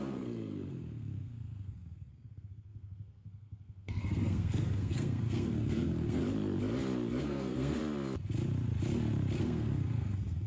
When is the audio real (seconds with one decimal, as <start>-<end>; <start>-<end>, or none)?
6.2-7.2; 7.8-9.4